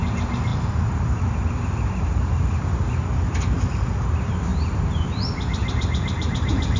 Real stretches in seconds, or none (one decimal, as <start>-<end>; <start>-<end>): 0.0-0.5; 2.6-4.5; 5.1-5.6